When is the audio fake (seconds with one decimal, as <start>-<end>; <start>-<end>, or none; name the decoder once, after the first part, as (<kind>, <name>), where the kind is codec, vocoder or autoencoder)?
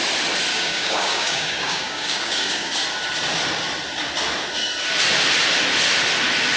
0.5-2.7 (codec, DAC)